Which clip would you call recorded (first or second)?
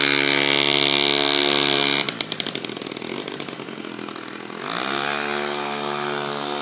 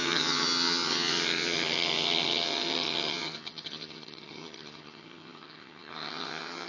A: first